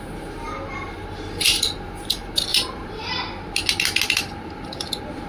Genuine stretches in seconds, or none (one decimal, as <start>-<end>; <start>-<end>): 0.0-2.5; 3.2-5.3